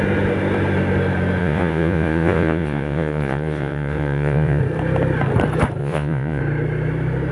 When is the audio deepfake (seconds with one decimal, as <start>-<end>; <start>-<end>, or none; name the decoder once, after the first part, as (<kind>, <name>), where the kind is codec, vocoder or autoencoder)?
1.4-4.6 (vocoder, Vocos); 5.8-6.4

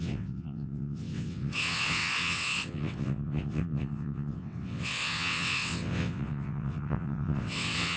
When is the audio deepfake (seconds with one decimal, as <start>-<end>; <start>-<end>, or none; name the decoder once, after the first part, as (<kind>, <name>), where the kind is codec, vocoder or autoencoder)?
0.0-8.0 (vocoder, WaveNeXt)

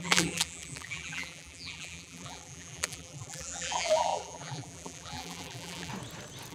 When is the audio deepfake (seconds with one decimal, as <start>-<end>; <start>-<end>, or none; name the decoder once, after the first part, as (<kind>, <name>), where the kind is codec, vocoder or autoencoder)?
0.0-5.9 (vocoder, BigVGAN v2)

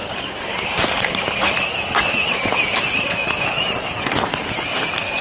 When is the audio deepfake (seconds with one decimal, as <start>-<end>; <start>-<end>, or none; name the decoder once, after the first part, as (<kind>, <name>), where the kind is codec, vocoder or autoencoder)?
0.0-1.6 (vocoder, BigVGAN v2)

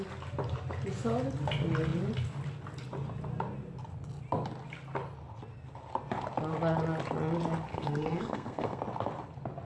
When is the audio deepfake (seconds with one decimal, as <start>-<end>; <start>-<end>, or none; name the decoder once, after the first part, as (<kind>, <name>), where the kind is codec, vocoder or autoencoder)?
7.7-8.8 (codec, SNAC)

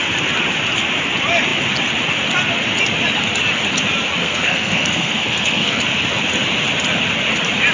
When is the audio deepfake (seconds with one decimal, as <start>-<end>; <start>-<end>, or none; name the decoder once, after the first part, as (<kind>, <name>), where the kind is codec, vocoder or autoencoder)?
4.2-5.8 (codec, SNAC)

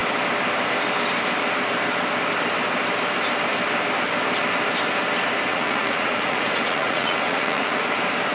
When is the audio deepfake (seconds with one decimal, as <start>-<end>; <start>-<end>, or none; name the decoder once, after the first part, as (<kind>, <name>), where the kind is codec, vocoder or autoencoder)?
5.5-7.8 (vocoder, Vocos)